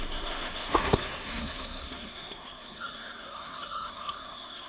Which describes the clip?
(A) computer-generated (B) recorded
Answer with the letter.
A